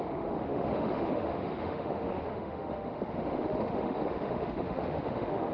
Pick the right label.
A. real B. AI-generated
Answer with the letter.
B